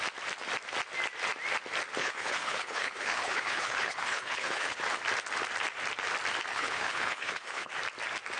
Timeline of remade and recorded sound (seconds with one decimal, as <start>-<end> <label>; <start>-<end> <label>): 0.0-2.0 recorded; 2.0-4.8 remade; 4.8-6.5 recorded; 6.5-7.7 remade; 7.7-8.4 recorded